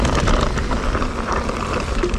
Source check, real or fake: real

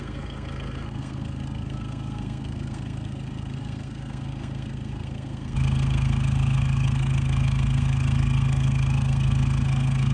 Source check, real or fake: fake